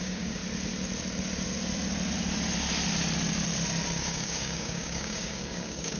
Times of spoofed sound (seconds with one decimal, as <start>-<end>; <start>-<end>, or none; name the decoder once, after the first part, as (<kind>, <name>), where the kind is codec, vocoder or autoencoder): 0.0-0.4 (codec, DAC); 4.0-6.0